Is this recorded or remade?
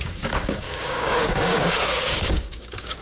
remade